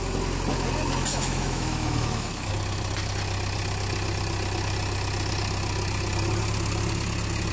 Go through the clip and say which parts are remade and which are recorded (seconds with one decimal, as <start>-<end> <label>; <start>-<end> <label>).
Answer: 0.0-1.1 recorded; 1.1-2.5 remade; 2.5-7.5 recorded